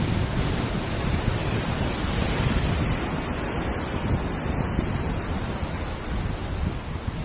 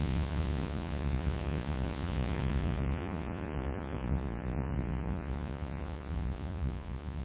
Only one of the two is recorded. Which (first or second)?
first